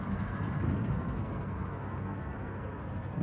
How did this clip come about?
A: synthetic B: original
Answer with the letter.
A